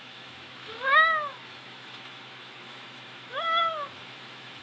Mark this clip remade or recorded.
remade